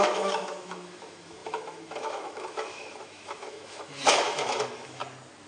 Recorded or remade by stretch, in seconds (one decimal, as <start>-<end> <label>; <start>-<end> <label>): 0.0-5.0 remade; 5.0-5.5 recorded